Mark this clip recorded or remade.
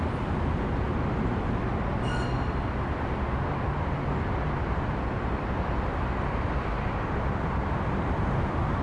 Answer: recorded